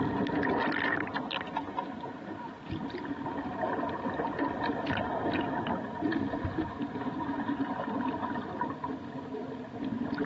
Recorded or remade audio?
recorded